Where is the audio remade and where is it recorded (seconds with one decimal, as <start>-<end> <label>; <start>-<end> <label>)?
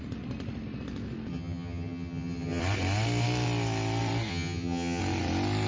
0.0-1.3 recorded; 1.3-2.6 remade; 2.6-4.3 recorded; 4.3-5.0 remade; 5.0-5.7 recorded